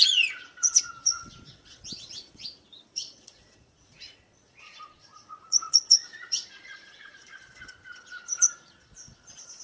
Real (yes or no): no